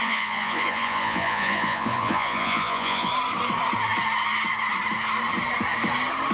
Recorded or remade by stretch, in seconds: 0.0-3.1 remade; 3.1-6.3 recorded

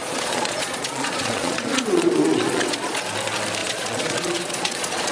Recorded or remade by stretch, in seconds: 0.0-3.0 remade; 3.0-3.6 recorded; 3.6-5.1 remade

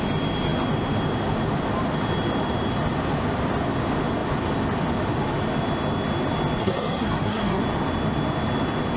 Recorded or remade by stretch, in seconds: 0.0-6.6 recorded; 6.6-7.6 remade; 7.6-9.0 recorded